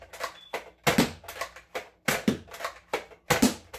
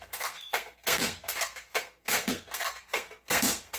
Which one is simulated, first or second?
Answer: second